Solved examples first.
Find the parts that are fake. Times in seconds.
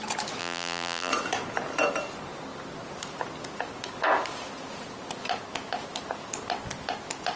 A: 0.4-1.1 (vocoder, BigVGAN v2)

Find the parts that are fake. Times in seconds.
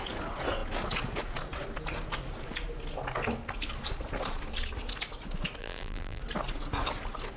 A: 5.6-6.2 (vocoder, BigVGAN v2)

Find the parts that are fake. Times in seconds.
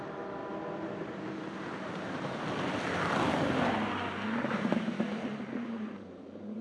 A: 0.0-0.4 (vocoder, BigVGAN v2); 4.4-5.3; 6.0-6.6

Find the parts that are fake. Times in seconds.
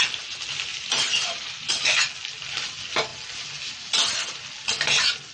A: 0.7-1.7 (vocoder, BigVGAN v2)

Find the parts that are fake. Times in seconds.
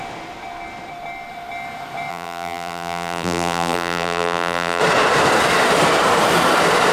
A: 2.1-4.8 (vocoder, BigVGAN v2)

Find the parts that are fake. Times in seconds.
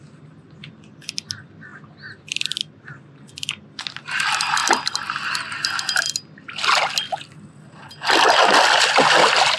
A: none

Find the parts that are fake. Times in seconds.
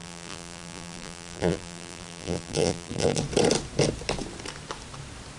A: 0.0-3.2 (vocoder, BigVGAN v2)